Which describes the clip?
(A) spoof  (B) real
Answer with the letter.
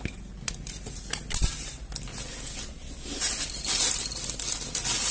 B